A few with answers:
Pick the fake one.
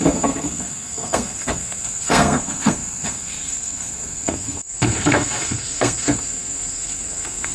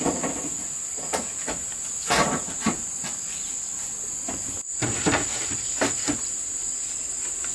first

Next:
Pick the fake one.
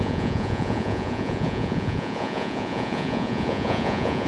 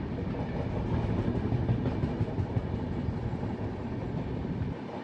first